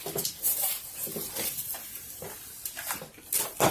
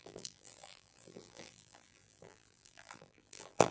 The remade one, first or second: second